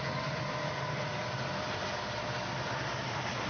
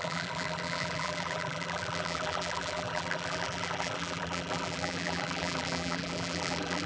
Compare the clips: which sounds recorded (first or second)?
first